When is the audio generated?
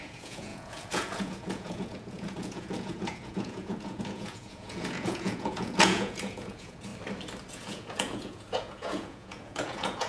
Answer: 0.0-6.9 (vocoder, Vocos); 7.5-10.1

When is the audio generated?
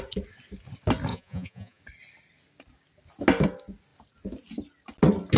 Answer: 1.1-1.8 (vocoder, Vocos)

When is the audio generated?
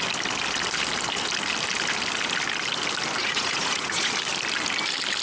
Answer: 3.2-4.1 (vocoder, Vocos)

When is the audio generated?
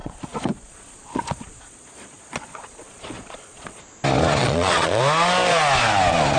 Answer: 0.0-3.8 (vocoder, Vocos); 4.4-5.0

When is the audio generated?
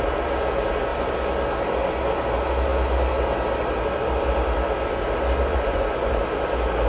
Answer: 5.5-6.2 (vocoder, Vocos)